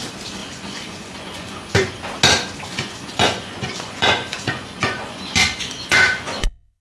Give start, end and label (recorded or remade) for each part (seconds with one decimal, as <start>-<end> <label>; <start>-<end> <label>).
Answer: 0.0-0.4 recorded; 0.4-2.0 remade; 2.0-2.7 recorded; 2.7-6.8 remade